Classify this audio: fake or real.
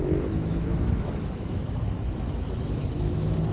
fake